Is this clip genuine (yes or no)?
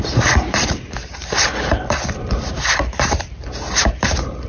no